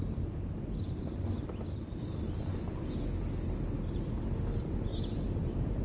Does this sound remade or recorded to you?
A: recorded